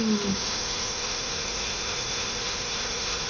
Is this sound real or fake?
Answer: fake